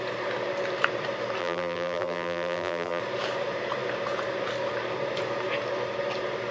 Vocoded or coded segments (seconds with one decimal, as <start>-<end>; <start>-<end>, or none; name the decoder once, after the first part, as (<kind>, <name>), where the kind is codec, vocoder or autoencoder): 1.4-3.0 (vocoder, BigVGAN v2)